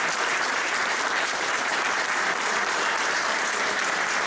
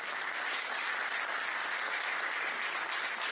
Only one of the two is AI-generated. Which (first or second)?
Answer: first